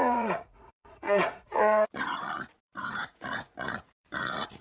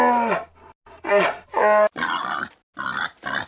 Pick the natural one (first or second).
second